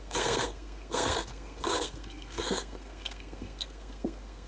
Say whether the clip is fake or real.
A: fake